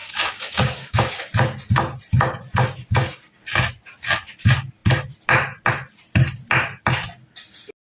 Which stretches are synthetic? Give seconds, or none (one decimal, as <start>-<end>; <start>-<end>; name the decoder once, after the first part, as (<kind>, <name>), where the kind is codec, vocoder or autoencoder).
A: 0.0-1.2 (codec, DAC)